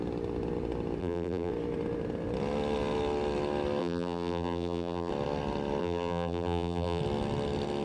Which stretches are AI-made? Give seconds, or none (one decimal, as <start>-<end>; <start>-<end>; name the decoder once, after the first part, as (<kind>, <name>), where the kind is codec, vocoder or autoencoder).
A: 1.0-1.5 (vocoder, BigVGAN v2); 3.8-5.1; 5.8-7.0